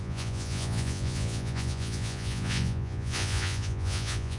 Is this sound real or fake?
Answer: fake